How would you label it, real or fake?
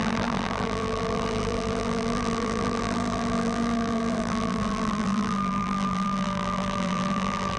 fake